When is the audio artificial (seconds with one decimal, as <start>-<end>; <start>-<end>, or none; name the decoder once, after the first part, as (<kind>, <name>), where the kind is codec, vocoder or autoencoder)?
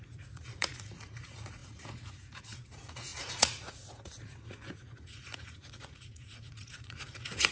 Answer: 0.0-7.5 (vocoder, Vocos)